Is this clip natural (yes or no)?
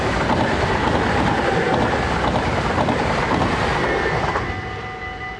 yes